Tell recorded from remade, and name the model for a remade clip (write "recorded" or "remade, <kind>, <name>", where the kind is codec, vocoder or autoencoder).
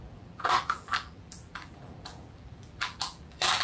remade, vocoder, BigVGAN v2